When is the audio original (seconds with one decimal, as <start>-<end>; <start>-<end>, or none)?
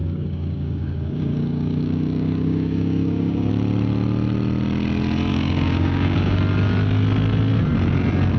3.5-5.3; 6.4-8.4